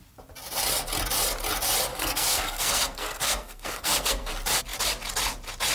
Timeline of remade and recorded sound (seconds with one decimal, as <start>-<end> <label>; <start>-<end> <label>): 0.0-1.9 recorded; 1.9-4.3 remade; 4.3-5.7 recorded